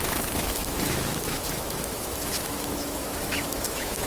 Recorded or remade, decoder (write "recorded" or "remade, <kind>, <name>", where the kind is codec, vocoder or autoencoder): remade, autoencoder, DAC-VAE